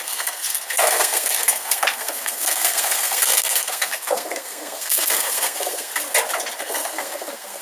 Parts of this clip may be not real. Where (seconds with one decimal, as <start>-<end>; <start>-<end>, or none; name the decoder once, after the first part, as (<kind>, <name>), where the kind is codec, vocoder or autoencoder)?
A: 0.0-5.9 (codec, SNAC); 6.6-7.6